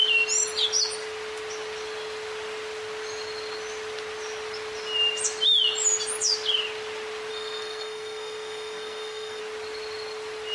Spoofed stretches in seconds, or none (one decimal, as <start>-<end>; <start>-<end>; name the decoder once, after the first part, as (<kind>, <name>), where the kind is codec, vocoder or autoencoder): 7.3-9.4 (codec, SNAC)